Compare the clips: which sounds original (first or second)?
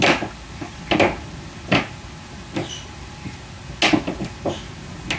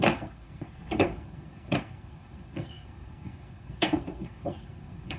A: first